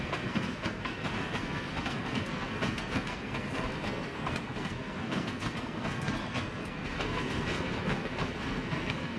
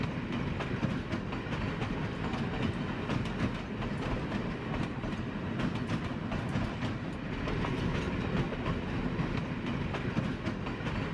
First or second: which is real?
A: second